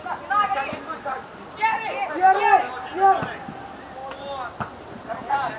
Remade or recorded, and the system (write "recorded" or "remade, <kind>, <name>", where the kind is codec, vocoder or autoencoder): recorded